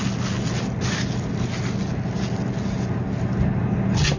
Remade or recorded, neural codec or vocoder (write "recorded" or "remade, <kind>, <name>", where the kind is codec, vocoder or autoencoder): recorded